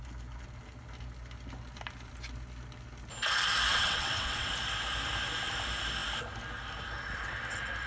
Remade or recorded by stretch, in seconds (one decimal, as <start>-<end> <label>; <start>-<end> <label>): 0.0-3.7 recorded; 3.7-4.5 remade; 4.5-7.9 recorded